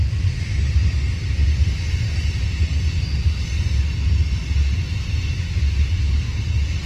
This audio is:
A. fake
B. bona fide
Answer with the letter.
B